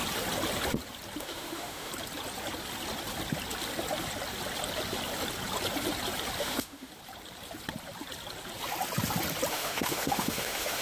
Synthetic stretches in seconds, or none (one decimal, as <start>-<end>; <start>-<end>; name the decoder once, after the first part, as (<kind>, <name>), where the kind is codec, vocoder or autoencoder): 1.2-1.9 (autoencoder, DAC-VAE); 6.4-6.9; 9.5-10.8